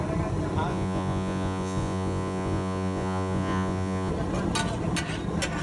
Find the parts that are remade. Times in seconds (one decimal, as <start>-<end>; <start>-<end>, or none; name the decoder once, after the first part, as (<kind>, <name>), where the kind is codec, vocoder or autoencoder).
0.7-4.1 (vocoder, Vocos)